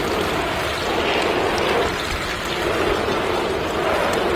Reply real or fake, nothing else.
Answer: real